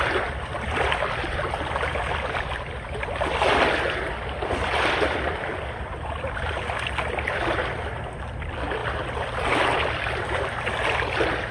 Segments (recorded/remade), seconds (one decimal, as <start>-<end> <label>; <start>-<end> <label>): 0.0-11.5 recorded